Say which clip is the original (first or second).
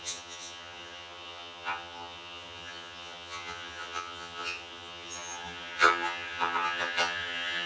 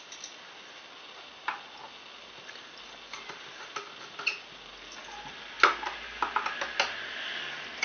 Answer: second